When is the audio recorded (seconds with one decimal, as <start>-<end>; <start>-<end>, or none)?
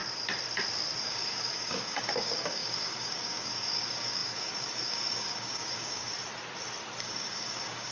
0.0-1.0; 6.1-7.0